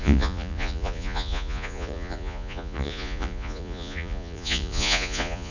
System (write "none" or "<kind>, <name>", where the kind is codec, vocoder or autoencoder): vocoder, Vocos